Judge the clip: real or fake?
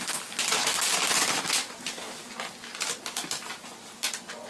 real